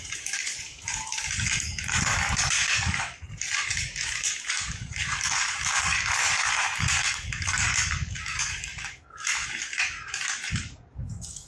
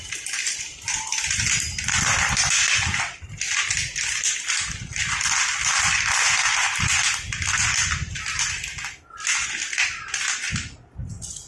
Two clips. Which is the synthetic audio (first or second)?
first